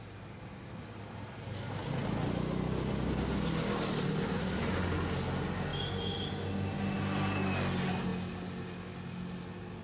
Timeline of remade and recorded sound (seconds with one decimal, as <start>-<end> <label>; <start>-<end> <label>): 0.0-9.8 recorded